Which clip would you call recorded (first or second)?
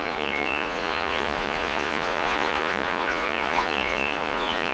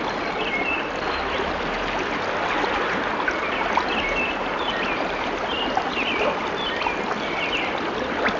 second